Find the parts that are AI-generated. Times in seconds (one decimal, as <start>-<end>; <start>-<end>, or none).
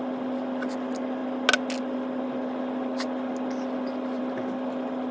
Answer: none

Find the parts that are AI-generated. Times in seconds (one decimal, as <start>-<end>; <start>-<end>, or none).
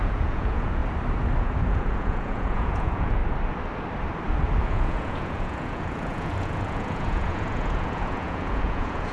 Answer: 0.0-0.8; 1.4-3.2; 4.6-9.1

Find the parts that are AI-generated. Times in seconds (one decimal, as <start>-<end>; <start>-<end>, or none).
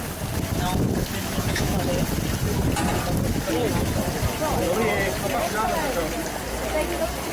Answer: 1.2-1.9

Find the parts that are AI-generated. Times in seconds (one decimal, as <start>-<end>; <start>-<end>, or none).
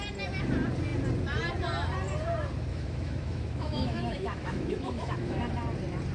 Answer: 2.7-5.5